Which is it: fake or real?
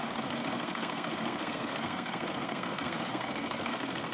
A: fake